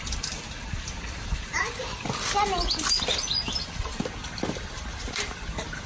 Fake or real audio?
real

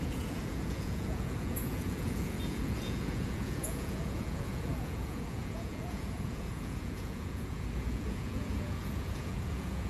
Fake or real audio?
fake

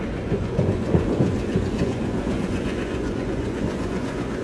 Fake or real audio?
fake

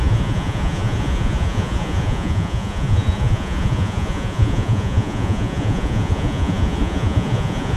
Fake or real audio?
fake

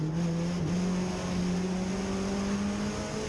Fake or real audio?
real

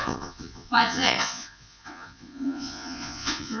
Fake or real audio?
fake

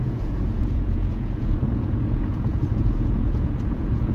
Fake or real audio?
fake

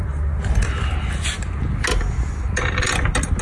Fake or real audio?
real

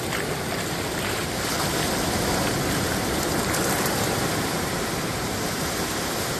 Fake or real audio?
real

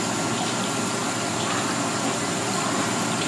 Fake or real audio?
real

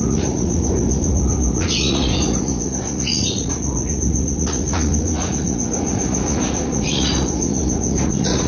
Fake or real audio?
fake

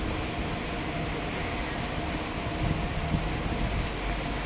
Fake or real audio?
real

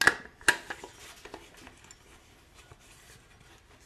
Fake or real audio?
real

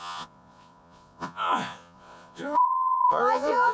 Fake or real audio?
fake